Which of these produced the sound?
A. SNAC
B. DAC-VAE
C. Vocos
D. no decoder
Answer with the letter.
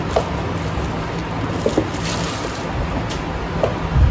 D